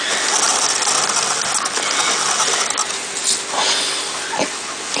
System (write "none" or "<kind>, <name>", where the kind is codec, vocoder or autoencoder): none